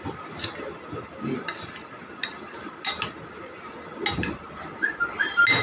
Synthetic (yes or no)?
no